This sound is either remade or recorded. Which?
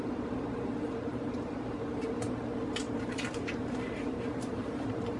remade